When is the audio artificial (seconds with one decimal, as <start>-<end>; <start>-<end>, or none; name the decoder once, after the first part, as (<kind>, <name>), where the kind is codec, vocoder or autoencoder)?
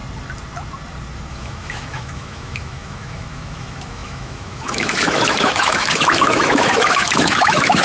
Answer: 1.3-7.8 (autoencoder, DAC-VAE)